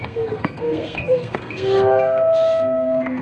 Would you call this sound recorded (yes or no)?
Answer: no